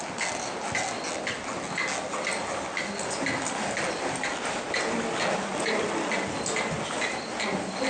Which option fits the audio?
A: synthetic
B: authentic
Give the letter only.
B